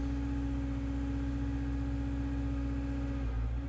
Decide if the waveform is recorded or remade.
recorded